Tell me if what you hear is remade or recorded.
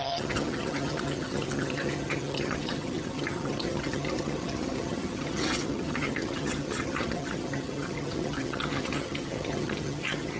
remade